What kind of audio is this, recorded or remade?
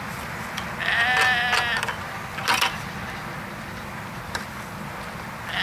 recorded